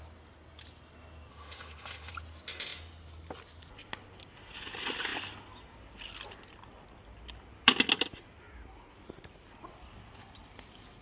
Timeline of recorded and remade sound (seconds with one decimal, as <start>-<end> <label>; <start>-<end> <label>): 0.0-1.3 recorded; 1.3-2.1 remade; 2.1-11.0 recorded